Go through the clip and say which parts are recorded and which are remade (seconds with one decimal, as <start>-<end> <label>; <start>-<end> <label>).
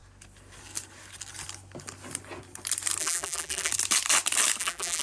0.0-3.0 recorded; 3.0-3.7 remade; 3.7-4.6 recorded; 4.6-5.0 remade